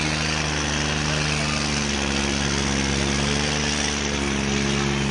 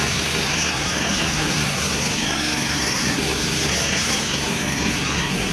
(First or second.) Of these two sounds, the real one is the first